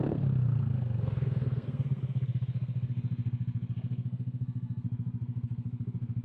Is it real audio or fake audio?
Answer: fake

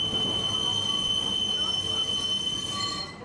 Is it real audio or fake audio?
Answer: real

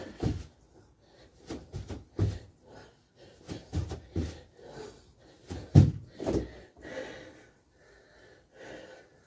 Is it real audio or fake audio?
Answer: real